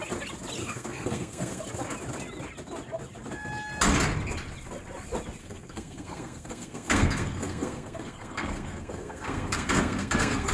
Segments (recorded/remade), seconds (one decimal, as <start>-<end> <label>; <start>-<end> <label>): 0.0-0.6 recorded; 0.6-1.6 remade; 1.6-5.4 recorded; 5.4-10.5 remade